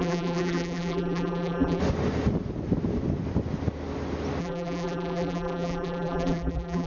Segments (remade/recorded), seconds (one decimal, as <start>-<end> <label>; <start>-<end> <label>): 0.0-1.8 remade; 1.8-4.4 recorded; 4.4-6.9 remade